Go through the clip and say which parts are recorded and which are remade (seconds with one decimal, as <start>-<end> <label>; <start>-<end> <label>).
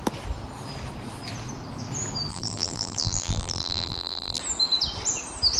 0.0-2.3 recorded; 2.3-4.4 remade; 4.4-5.6 recorded